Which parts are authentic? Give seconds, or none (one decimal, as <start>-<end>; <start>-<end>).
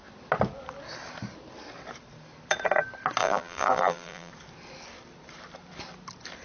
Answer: 0.0-3.2; 4.3-6.4